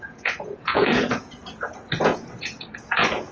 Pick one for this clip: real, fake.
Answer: fake